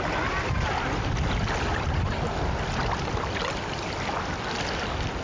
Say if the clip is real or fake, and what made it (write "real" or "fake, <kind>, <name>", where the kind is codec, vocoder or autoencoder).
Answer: real